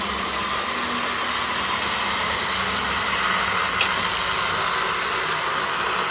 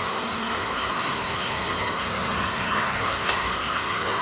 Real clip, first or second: first